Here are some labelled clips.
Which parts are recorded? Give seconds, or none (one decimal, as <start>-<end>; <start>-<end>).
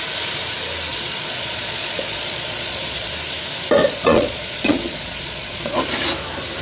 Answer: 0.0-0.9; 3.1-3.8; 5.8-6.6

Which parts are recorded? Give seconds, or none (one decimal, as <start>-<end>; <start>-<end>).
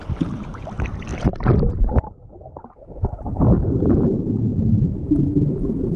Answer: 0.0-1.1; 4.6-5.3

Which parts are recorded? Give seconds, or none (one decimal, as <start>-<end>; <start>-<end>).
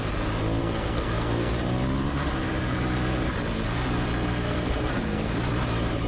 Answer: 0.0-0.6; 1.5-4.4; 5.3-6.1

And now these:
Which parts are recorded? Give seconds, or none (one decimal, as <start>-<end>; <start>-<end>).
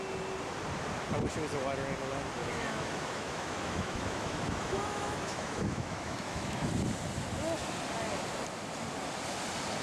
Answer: 0.0-2.4; 6.7-9.8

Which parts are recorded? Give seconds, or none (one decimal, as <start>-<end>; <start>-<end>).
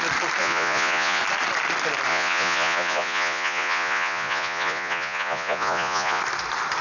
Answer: 0.0-0.4; 1.2-2.1; 6.2-6.8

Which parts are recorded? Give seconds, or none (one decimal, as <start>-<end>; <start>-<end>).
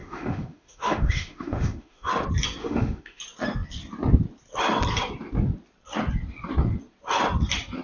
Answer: 2.1-2.6; 3.2-7.8